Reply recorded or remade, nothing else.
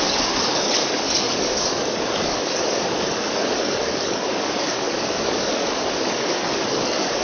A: remade